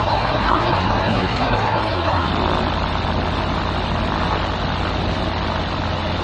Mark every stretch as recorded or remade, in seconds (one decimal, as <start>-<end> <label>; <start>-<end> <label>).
0.0-2.3 remade; 2.3-6.2 recorded